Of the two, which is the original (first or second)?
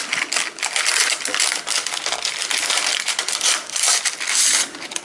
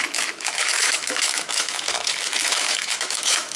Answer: first